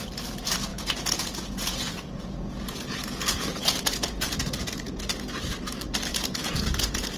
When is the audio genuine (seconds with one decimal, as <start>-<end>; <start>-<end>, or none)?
0.0-0.7; 5.0-6.1